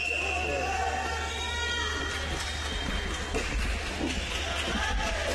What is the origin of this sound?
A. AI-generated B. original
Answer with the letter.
B